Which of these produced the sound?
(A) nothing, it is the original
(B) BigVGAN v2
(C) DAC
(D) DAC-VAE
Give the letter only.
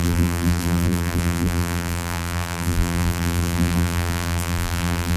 B